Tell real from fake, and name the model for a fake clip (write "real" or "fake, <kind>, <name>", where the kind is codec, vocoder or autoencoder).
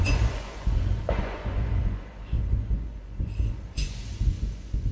fake, vocoder, Vocos